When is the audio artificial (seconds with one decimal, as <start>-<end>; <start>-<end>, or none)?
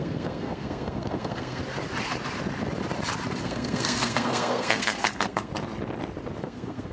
0.0-1.6; 3.4-5.5; 6.4-6.9